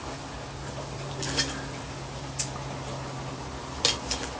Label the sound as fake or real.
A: real